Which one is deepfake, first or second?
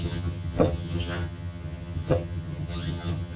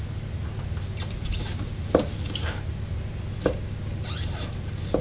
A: first